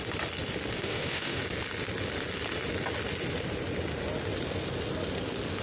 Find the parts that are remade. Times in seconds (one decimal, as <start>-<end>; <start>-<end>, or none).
0.7-1.4